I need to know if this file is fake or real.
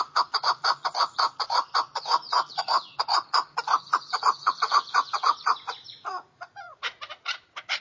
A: fake